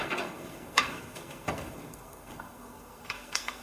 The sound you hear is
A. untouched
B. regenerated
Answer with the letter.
B